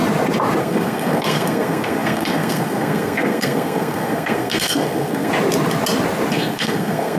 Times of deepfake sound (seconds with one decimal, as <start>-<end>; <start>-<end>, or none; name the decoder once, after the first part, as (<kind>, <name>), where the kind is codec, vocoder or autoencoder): 0.6-5.3 (codec, SNAC); 6.3-7.2